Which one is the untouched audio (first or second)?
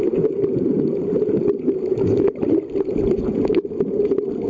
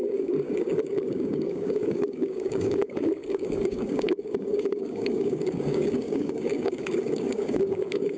first